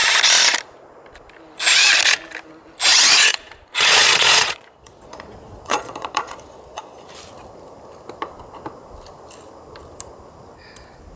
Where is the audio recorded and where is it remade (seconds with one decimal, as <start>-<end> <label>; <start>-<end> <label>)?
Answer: 0.0-2.9 recorded; 2.9-7.0 remade; 7.0-11.2 recorded